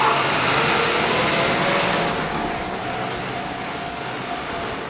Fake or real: real